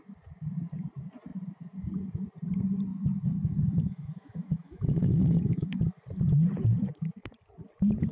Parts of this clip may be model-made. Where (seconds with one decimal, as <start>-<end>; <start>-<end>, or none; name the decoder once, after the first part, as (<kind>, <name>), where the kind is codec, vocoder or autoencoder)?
2.9-5.8 (autoencoder, DAC-VAE)

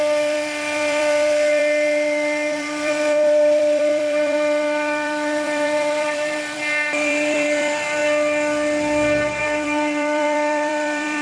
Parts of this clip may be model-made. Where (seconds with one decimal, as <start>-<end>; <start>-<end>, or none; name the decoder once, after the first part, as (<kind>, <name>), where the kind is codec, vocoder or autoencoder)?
0.0-8.0 (vocoder, BigVGAN v2); 9.4-11.2

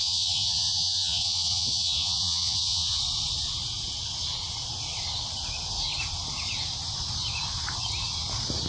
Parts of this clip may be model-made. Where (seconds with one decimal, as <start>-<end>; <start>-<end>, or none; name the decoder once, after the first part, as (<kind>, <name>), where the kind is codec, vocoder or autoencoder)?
0.0-3.0 (vocoder, Vocos)

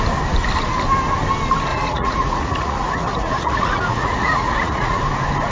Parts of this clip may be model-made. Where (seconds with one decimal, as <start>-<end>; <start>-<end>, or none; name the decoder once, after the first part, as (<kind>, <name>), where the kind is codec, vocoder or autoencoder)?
1.7-5.0 (vocoder, Vocos)

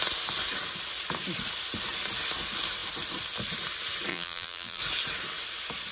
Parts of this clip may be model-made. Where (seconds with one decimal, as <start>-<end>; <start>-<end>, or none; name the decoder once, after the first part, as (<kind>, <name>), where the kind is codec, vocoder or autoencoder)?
4.1-4.8 (vocoder, BigVGAN v2)

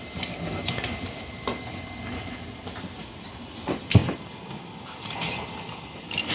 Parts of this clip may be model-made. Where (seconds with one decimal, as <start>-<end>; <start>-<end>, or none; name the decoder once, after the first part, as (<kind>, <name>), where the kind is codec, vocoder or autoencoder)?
0.0-1.5 (vocoder, BigVGAN v2); 2.5-6.3